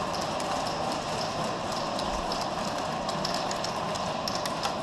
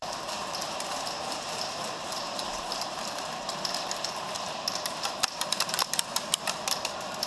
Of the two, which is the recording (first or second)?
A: first